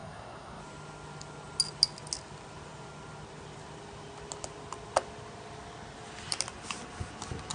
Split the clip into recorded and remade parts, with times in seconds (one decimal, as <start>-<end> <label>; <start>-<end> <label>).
0.0-0.6 remade; 0.6-7.5 recorded

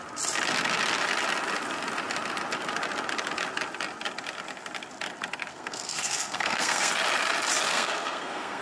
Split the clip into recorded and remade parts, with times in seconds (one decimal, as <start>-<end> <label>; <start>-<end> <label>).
0.0-5.5 recorded; 5.5-6.9 remade; 6.9-7.7 recorded; 7.7-8.6 remade

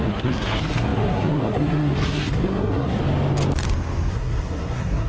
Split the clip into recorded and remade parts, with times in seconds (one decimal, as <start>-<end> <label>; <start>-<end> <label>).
0.0-3.0 remade; 3.0-4.1 recorded; 4.1-5.1 remade

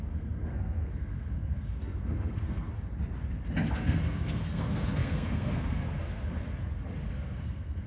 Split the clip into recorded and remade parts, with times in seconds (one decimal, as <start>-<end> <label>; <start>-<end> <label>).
0.0-2.7 remade; 2.7-3.7 recorded; 3.7-6.4 remade; 6.4-7.1 recorded; 7.1-7.9 remade

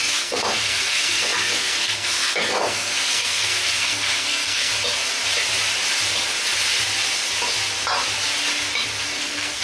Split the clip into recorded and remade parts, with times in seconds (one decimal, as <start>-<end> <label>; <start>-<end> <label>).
0.0-4.7 remade; 4.7-9.2 recorded; 9.2-9.6 remade

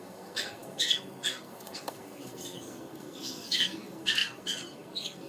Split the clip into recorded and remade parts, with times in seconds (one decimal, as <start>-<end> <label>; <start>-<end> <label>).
0.0-5.3 remade